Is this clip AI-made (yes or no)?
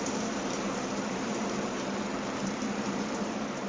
yes